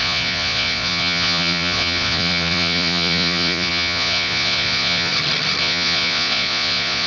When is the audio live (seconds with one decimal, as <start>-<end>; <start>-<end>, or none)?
5.1-5.6